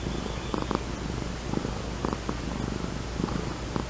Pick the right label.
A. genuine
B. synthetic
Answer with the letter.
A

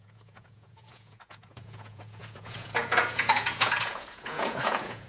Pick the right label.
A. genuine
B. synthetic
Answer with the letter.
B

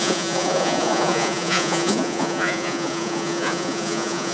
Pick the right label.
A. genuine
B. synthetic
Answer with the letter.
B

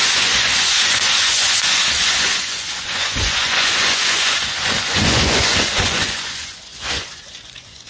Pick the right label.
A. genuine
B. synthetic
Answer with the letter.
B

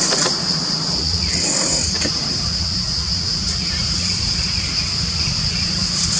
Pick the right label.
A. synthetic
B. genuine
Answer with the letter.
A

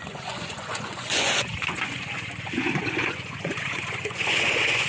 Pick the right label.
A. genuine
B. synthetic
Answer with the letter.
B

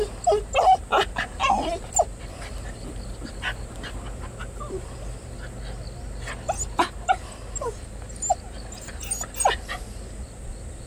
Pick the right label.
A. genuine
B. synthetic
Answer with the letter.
A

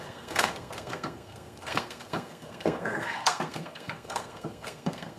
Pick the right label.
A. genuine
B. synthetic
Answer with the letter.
B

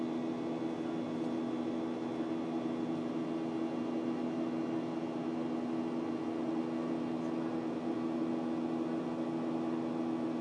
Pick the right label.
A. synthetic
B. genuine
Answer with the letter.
B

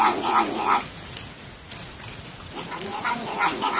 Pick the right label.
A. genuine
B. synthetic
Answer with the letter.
B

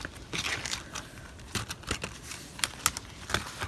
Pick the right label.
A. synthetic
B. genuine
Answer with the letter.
B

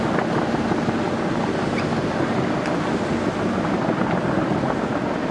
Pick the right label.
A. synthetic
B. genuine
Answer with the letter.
B